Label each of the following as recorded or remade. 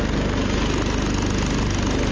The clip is recorded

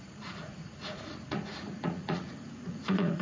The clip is remade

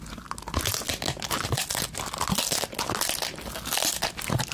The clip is recorded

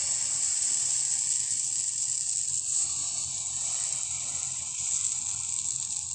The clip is recorded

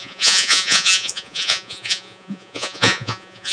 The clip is remade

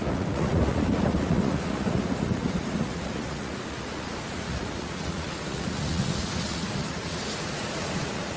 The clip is remade